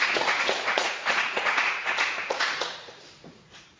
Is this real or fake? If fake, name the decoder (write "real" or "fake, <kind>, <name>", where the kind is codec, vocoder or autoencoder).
fake, vocoder, Vocos